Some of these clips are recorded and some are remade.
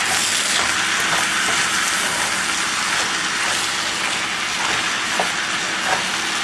recorded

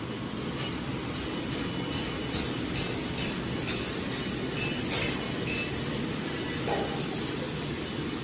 recorded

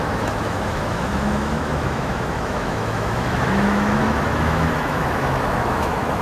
remade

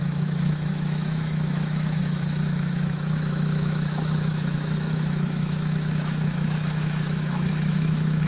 remade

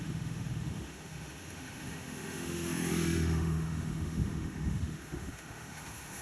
remade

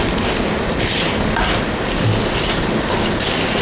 recorded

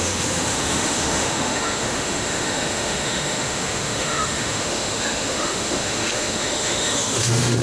remade